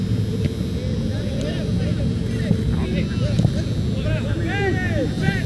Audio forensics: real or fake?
real